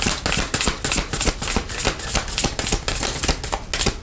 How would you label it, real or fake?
real